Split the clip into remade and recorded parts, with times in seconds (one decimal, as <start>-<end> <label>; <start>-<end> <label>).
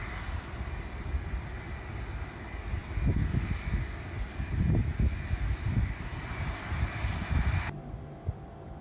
0.0-8.8 recorded